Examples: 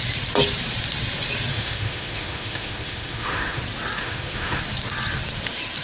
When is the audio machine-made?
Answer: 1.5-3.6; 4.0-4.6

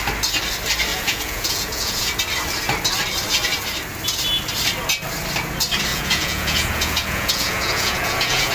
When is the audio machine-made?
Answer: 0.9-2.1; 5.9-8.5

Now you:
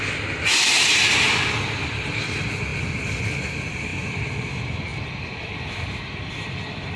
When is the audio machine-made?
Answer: none

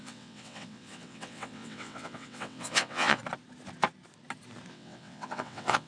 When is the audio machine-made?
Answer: 0.0-3.2; 4.7-5.9

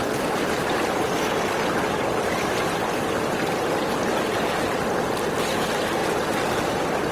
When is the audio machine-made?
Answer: 0.6-4.8